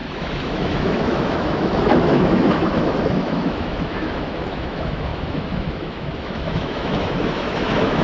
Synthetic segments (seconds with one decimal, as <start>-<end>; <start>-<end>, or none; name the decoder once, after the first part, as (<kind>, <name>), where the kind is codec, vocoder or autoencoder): 0.0-8.0 (autoencoder, DAC-VAE)